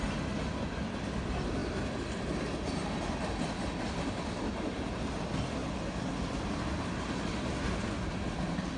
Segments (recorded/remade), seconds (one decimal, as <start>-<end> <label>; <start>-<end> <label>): 0.0-8.8 recorded